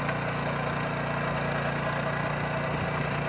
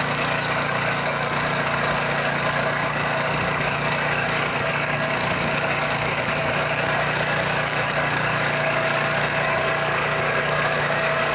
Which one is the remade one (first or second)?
second